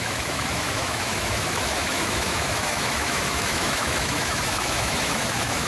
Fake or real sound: fake